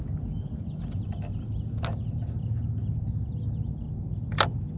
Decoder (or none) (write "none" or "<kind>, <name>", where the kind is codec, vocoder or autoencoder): none